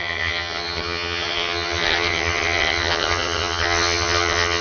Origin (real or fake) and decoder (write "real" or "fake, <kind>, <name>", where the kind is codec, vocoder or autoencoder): fake, vocoder, HiFi-GAN